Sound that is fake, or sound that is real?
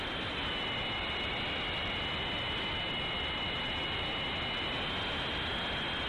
real